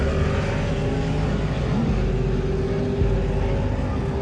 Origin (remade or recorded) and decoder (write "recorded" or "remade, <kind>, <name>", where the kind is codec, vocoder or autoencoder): recorded